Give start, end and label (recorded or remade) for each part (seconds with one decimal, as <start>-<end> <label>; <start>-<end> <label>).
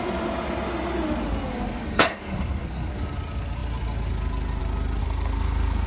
0.0-1.5 recorded; 1.5-2.9 remade; 2.9-5.0 recorded; 5.0-5.9 remade